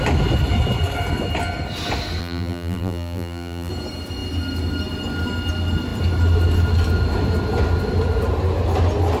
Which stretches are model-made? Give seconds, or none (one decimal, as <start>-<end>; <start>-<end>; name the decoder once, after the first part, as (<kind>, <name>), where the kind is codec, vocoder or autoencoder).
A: 2.2-3.7 (vocoder, BigVGAN v2)